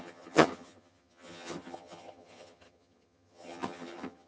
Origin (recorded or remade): remade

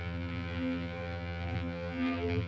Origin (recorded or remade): remade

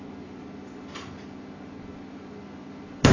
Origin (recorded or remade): recorded